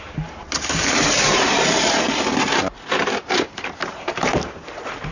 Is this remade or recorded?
remade